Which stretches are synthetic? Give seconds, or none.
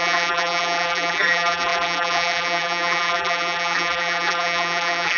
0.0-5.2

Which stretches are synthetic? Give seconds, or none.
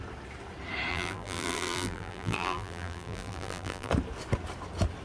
0.9-3.9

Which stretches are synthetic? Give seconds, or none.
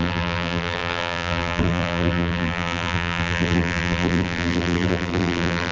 0.0-5.7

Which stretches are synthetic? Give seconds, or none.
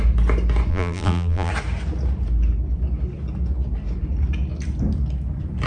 0.7-1.5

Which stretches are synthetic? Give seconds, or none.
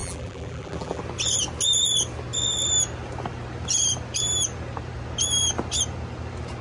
0.0-1.0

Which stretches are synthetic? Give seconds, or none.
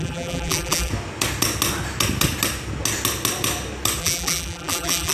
0.0-0.9; 4.0-5.1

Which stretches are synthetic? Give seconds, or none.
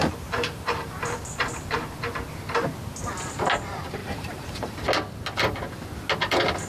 0.0-1.2; 4.0-4.7